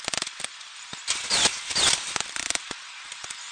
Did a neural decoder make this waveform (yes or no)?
no